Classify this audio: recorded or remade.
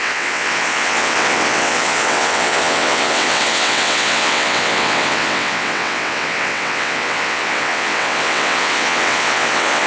remade